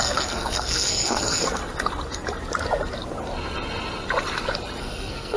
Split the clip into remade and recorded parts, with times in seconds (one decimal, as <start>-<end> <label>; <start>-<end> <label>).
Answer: 0.0-1.6 remade; 1.6-4.8 recorded; 4.8-5.4 remade